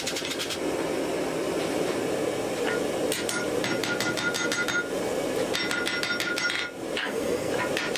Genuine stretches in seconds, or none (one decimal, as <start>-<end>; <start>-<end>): 0.0-7.0; 7.5-8.0